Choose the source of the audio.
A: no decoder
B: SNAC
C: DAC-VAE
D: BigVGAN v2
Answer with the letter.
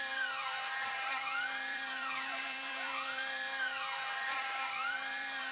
D